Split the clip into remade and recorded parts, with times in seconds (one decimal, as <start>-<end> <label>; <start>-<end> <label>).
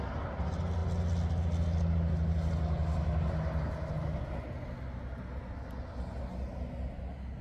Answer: 0.0-7.4 recorded